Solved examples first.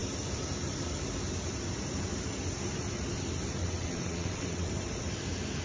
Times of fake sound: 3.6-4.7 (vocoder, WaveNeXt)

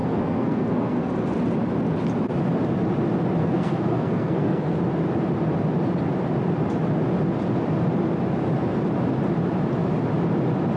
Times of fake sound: 0.0-1.1 (codec, SNAC); 3.4-4.8